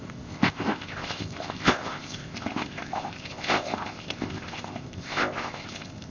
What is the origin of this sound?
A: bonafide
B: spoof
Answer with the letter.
B